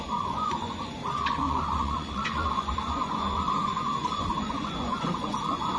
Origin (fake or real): fake